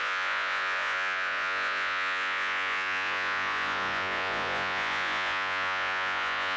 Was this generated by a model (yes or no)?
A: yes